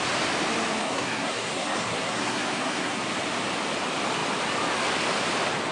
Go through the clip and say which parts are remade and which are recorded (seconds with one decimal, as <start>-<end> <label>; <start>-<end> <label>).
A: 0.0-0.8 recorded; 0.8-3.0 remade; 3.0-5.7 recorded